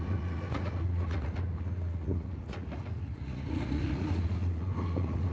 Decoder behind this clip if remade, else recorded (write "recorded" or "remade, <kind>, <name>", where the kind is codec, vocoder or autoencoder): remade, vocoder, Vocos